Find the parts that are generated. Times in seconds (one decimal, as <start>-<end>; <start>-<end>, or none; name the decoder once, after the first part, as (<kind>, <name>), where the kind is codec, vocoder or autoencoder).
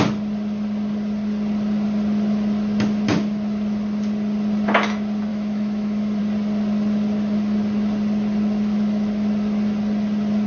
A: 5.3-6.2 (autoencoder, DAC-VAE)